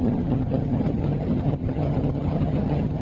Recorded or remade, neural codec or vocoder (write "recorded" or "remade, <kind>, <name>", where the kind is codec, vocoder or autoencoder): remade, vocoder, HiFi-GAN